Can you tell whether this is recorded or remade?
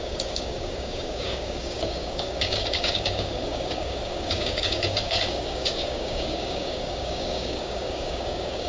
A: remade